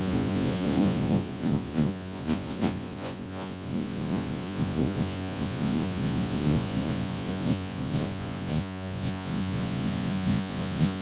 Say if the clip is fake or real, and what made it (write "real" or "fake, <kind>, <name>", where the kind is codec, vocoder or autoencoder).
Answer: fake, vocoder, Vocos